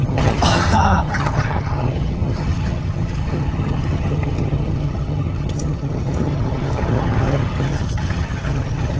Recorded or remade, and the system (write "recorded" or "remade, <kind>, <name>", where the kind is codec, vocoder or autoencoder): remade, vocoder, HiFi-GAN